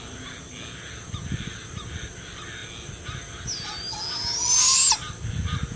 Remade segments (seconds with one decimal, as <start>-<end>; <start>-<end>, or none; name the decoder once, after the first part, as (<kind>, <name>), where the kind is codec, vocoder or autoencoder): none